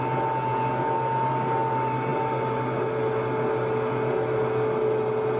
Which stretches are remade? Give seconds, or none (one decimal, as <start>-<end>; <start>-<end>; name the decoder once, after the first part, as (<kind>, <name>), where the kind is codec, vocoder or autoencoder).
none